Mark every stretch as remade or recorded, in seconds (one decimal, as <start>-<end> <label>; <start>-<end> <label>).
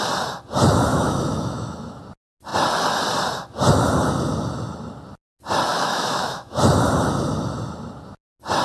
0.0-0.9 recorded; 0.9-2.0 remade; 2.0-5.7 recorded; 5.7-6.6 remade; 6.6-8.6 recorded